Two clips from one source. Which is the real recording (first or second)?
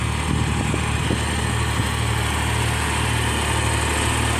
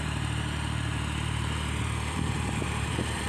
first